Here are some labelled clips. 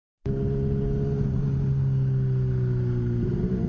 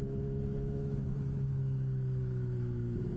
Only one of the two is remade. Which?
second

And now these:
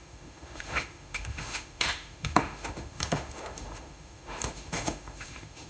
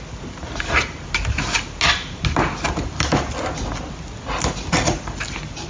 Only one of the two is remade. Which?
first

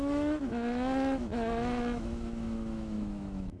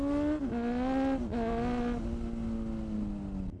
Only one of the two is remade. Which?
first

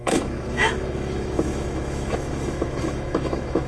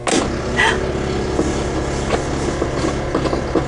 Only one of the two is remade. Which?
first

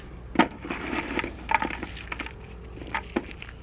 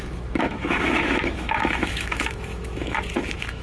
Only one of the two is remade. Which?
second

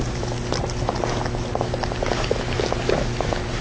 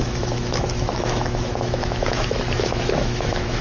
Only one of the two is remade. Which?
second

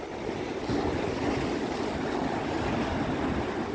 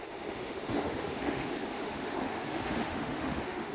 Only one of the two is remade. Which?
second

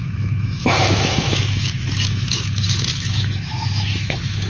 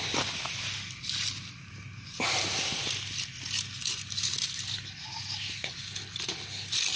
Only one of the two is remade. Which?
first